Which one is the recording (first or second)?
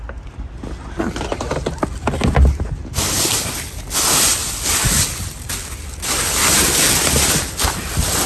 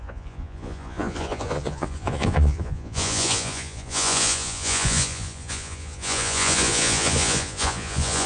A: first